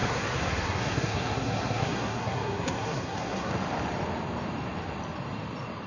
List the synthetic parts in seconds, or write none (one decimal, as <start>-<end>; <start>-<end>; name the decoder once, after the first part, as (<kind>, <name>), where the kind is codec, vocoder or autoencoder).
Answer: 0.0-3.5 (codec, SNAC)